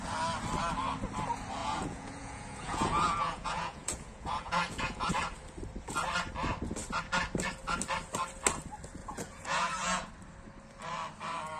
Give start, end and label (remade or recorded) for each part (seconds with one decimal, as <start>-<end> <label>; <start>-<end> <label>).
0.0-1.6 recorded; 1.6-5.1 remade; 5.1-9.0 recorded; 9.0-10.1 remade; 10.1-11.6 recorded